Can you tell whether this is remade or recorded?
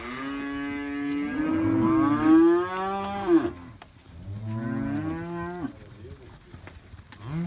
recorded